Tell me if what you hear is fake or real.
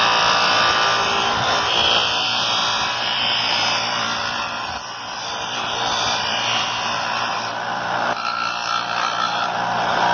fake